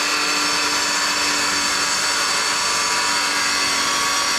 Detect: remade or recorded recorded